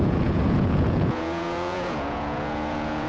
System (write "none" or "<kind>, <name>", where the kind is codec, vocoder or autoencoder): vocoder, Vocos